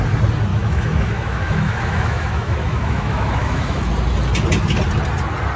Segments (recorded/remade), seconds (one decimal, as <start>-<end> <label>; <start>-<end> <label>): 0.0-0.5 recorded; 0.5-3.9 remade; 3.9-5.6 recorded